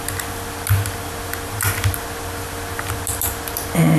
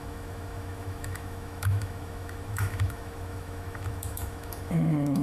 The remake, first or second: second